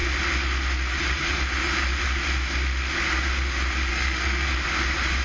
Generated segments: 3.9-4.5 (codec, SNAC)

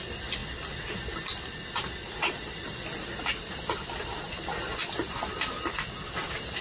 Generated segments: none

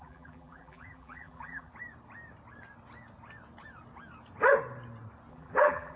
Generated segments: 0.0-1.7 (vocoder, BigVGAN v2); 5.3-6.0

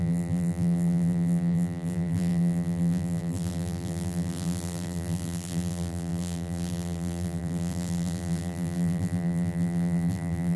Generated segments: 0.0-10.6 (vocoder, BigVGAN v2)

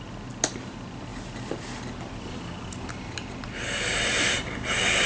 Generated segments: none